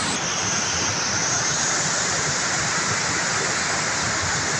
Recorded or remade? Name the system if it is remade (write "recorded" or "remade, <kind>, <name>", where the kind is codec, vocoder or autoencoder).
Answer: recorded